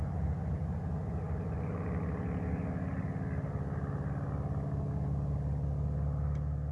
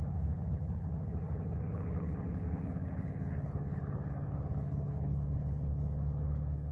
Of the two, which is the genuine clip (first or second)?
first